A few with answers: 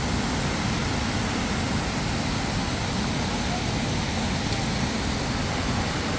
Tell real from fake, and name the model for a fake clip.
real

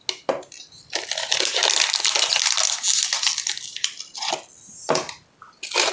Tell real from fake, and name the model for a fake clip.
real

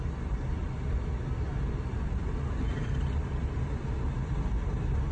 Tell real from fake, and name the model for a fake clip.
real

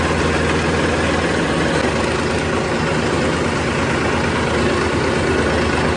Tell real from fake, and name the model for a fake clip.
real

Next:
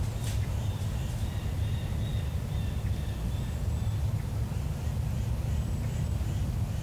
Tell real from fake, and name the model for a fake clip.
real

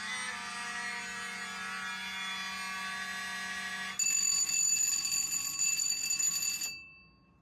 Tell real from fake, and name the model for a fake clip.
real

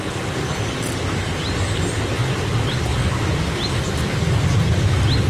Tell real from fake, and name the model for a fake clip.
real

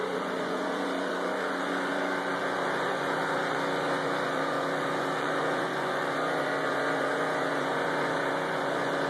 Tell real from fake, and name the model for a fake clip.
fake, vocoder, Vocos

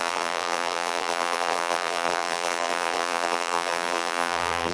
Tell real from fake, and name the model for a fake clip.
fake, vocoder, BigVGAN v2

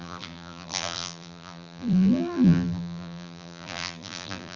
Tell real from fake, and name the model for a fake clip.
fake, vocoder, BigVGAN v2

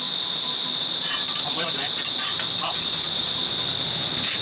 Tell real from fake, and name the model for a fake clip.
fake, vocoder, BigVGAN v2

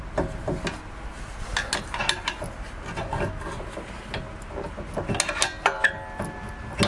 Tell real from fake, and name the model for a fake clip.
real